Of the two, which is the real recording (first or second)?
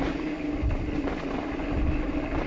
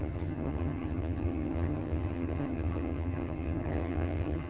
first